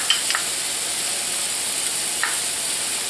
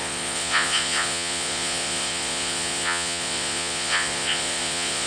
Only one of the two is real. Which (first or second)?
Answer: first